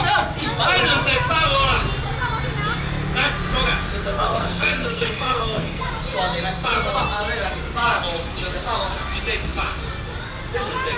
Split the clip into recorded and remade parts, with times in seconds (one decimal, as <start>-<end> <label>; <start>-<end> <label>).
0.0-4.0 recorded; 4.0-5.9 remade; 5.9-11.0 recorded